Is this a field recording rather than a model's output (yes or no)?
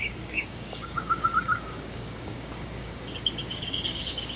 no